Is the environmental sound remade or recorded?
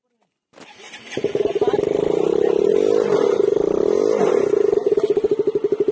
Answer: recorded